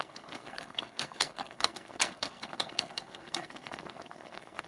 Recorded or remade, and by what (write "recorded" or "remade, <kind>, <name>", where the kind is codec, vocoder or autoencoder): remade, codec, SNAC